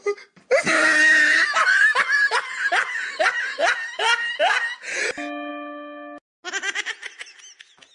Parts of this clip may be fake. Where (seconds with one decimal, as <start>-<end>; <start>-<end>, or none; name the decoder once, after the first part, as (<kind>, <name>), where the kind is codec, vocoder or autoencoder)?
none